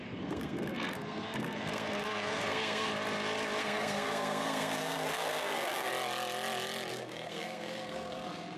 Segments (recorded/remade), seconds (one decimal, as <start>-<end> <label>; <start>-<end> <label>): 0.0-2.9 remade; 2.9-3.6 recorded; 3.6-5.9 remade; 5.9-6.9 recorded; 6.9-8.6 remade